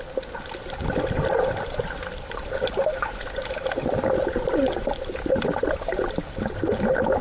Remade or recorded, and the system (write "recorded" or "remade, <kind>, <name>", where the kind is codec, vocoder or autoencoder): recorded